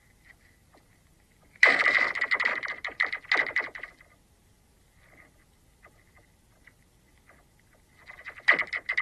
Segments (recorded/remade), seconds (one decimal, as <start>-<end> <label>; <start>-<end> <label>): 0.0-0.6 recorded; 0.6-1.9 remade; 1.9-2.5 recorded; 2.5-3.1 remade; 3.1-9.0 recorded